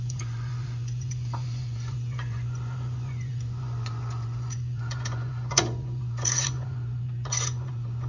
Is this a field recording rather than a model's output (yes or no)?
no